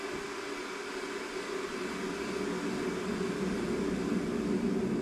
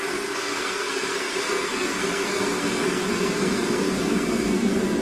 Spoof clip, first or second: second